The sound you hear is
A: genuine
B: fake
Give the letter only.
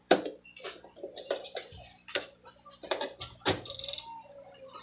A